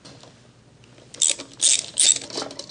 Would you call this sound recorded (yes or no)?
yes